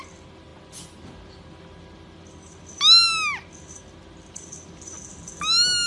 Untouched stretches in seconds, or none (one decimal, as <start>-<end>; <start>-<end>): 0.0-5.9